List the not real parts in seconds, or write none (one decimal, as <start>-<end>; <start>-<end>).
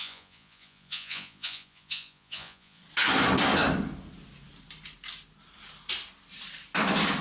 0.0-2.8